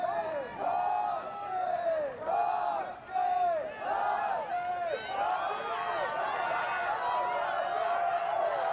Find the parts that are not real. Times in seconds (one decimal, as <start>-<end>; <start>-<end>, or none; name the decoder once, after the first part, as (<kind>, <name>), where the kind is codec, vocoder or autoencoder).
none